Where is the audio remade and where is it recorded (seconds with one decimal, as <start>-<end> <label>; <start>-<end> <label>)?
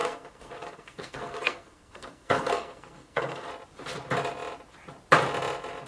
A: 0.0-3.5 remade; 3.5-5.9 recorded